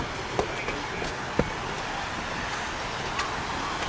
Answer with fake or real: real